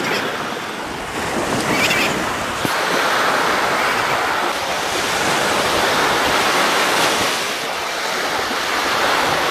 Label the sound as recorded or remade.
recorded